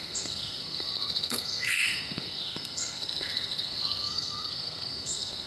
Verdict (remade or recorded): remade